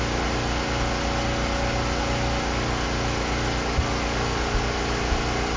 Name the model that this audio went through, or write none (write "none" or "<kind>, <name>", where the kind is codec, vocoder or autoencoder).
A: none